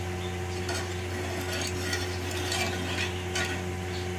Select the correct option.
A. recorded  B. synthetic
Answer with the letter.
A